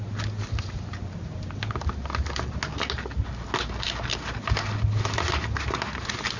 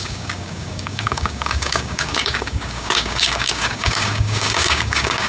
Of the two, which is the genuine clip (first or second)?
first